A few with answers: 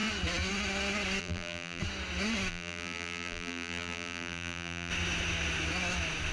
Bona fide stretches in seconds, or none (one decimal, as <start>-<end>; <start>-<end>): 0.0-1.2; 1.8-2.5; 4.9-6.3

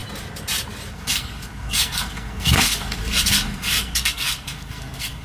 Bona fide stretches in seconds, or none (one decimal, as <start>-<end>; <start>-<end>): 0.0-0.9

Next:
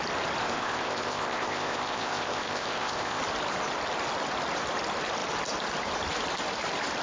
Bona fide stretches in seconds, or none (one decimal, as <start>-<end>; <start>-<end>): 0.0-0.4; 3.2-7.0

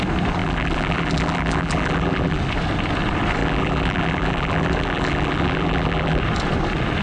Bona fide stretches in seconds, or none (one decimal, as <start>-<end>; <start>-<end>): 0.0-0.4; 2.4-3.4; 6.2-7.0

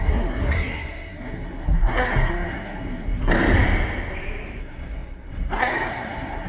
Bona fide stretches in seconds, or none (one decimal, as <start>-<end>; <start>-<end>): 3.3-4.6

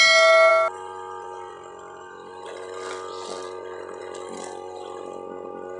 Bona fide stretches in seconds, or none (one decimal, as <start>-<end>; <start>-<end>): 0.0-5.8